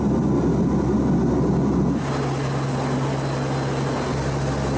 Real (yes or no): yes